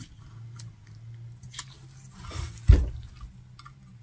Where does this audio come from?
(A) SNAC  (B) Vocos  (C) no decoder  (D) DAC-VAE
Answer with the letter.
C